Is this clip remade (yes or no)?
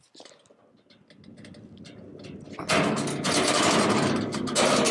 no